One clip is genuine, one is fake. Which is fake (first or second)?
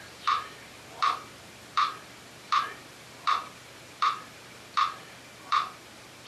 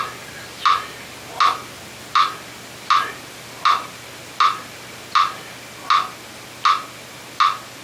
first